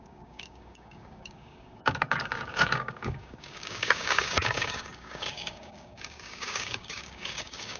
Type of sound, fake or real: fake